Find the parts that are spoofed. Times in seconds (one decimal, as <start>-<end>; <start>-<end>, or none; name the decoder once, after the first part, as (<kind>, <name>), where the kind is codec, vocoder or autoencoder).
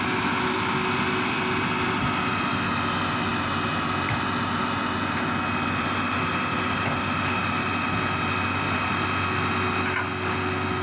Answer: none